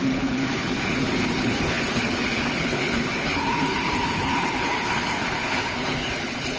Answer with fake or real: fake